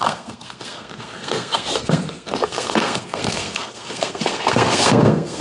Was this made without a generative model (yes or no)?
no